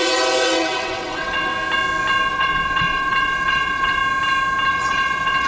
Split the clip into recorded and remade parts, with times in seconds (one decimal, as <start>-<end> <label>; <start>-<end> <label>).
0.0-1.5 remade; 1.5-2.3 recorded; 2.3-4.0 remade; 4.0-4.7 recorded; 4.7-5.5 remade